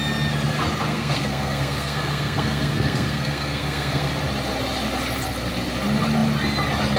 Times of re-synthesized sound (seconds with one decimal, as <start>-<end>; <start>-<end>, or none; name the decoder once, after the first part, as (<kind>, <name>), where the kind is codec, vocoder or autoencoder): 0.9-4.1 (codec, SNAC)